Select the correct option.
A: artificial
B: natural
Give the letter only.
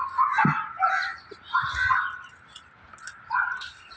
B